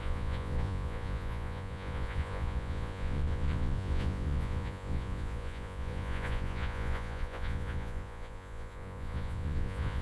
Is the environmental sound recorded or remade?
remade